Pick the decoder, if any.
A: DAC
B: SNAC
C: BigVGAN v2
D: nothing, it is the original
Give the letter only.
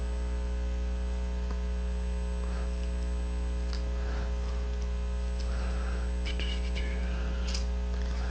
D